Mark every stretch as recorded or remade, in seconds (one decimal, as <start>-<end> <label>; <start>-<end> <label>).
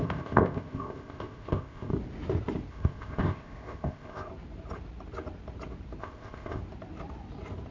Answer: 0.0-1.9 remade; 1.9-2.7 recorded; 2.7-4.3 remade; 4.3-6.0 recorded; 6.0-6.6 remade; 6.6-7.7 recorded